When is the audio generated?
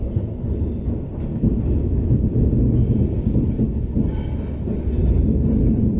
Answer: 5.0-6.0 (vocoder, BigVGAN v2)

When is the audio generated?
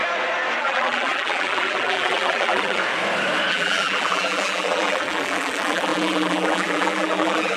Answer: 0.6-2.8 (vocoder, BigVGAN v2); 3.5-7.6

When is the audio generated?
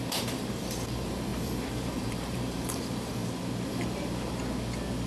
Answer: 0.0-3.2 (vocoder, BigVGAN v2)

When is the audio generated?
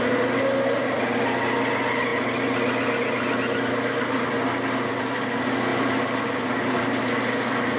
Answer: 5.7-7.3 (vocoder, BigVGAN v2)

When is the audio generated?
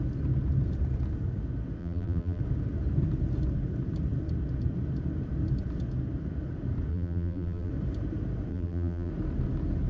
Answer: 1.8-2.4 (vocoder, BigVGAN v2); 6.9-7.7; 8.5-9.1